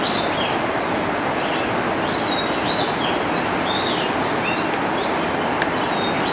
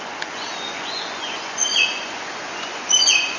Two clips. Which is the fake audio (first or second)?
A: second